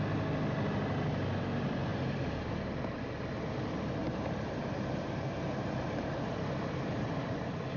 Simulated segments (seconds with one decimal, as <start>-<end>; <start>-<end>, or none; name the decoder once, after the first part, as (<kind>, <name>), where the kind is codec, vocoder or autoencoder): 1.9-2.5 (vocoder, BigVGAN v2); 4.0-7.8